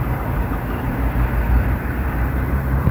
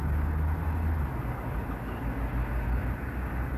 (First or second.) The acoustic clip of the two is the second